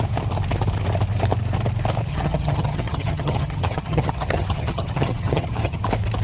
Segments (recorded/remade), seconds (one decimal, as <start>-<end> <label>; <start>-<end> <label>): 0.0-2.1 recorded; 2.1-5.8 remade; 5.8-6.2 recorded